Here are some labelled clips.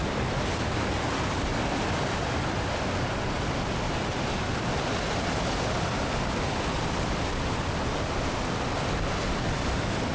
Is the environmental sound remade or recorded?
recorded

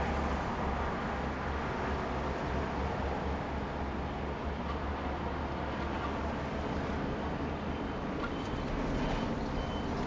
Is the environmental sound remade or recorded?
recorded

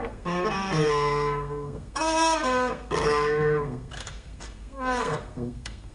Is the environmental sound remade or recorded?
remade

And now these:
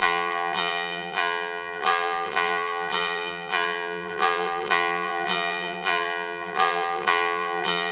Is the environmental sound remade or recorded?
remade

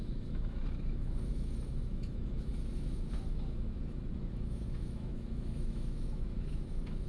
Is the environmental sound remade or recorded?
remade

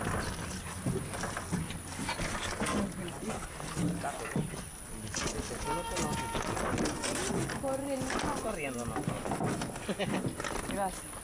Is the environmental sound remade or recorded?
recorded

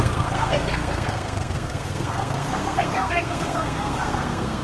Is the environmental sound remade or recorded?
remade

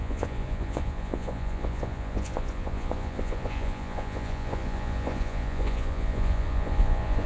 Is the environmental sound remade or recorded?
remade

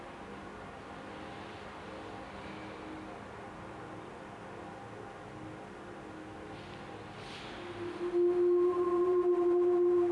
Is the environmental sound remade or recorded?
recorded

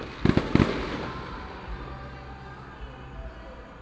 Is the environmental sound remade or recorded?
recorded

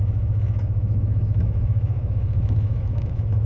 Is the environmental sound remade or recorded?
remade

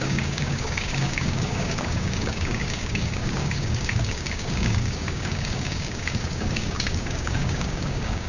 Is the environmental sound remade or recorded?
remade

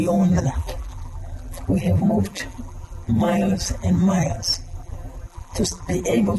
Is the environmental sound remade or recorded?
remade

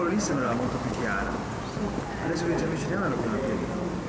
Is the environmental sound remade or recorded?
recorded